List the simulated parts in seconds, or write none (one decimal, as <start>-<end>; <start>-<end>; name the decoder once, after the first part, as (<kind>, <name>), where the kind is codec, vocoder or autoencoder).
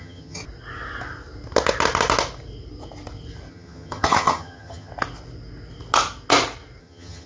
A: 0.0-0.4 (vocoder, HiFi-GAN); 3.5-4.9; 6.8-7.3